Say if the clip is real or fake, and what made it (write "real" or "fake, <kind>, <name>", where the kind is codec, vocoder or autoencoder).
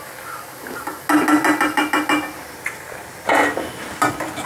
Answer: real